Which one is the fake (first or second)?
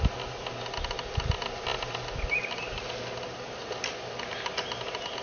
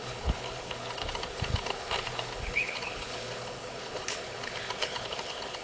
second